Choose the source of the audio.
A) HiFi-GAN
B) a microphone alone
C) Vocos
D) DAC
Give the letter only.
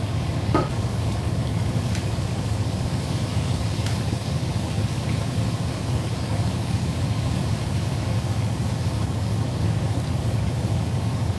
D